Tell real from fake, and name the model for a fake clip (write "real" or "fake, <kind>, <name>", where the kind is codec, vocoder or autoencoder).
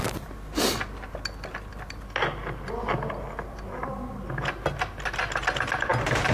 real